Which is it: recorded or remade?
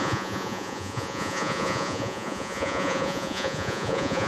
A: remade